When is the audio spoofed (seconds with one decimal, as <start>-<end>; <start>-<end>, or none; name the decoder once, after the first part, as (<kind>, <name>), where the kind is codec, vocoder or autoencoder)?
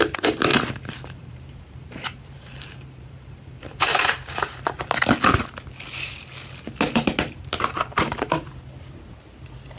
0.5-4.7 (vocoder, BigVGAN v2)